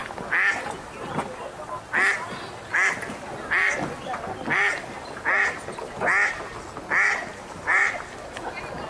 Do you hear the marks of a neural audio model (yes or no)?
no